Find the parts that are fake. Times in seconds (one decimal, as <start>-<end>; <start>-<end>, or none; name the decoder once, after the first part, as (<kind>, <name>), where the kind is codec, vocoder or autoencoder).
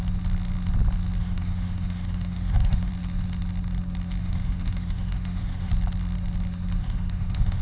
1.2-2.9 (autoencoder, DAC-VAE); 4.2-5.7; 6.8-7.6